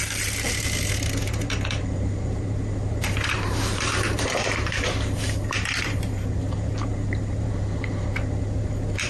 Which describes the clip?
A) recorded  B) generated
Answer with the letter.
B